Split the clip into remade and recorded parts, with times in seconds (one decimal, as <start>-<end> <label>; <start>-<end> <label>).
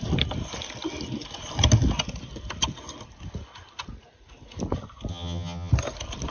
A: 0.0-5.1 recorded; 5.1-5.7 remade; 5.7-6.3 recorded